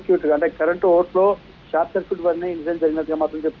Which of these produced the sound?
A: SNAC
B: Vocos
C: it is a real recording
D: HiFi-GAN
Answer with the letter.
C